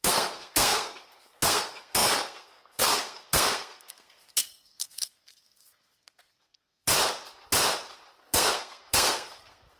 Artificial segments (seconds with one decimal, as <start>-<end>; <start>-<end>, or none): 0.0-6.9; 8.2-9.8